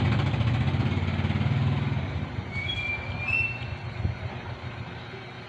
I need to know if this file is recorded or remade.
recorded